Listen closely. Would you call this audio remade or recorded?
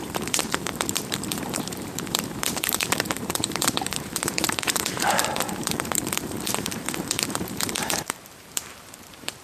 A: remade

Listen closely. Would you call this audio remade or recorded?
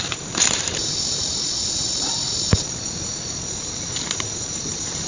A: remade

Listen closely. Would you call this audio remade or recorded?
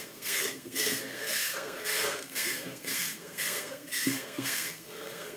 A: remade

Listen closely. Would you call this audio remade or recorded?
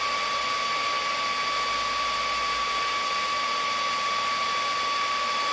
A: recorded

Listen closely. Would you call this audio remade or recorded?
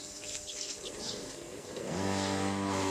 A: remade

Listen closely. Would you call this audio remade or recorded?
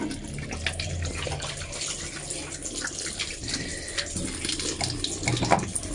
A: recorded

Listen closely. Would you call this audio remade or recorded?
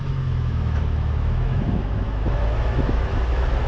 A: remade